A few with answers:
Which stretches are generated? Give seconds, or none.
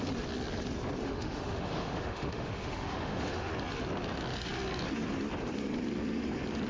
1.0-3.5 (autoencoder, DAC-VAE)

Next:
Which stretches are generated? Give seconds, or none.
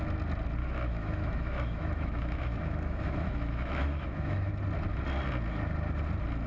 0.6-4.5 (autoencoder, DAC-VAE)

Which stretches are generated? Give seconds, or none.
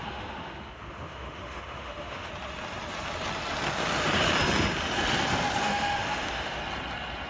0.0-2.3 (autoencoder, DAC-VAE); 5.6-6.6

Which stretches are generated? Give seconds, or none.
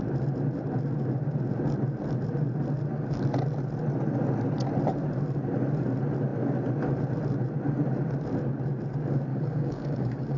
9.3-10.4 (codec, DAC)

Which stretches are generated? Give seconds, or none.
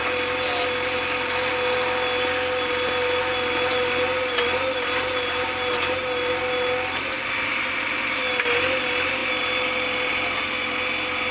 none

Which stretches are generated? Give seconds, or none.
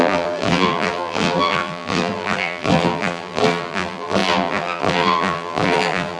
0.0-6.2 (vocoder, BigVGAN v2)